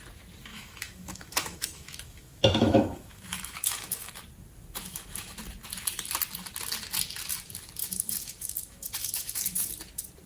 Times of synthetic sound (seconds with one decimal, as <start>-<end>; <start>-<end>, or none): 0.5-4.1; 4.8-5.4; 7.8-9.7